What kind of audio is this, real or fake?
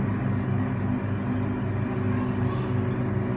real